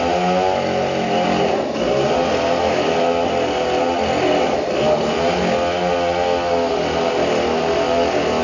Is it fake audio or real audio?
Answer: real